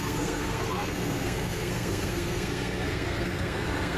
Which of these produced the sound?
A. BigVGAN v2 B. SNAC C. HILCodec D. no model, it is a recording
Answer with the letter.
B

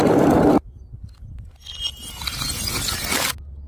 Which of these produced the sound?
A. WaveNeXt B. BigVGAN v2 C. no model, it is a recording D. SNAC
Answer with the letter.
C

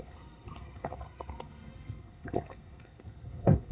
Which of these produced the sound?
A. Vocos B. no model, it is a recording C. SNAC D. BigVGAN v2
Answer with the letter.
C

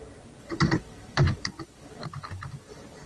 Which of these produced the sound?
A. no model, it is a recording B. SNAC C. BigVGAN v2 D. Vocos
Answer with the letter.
C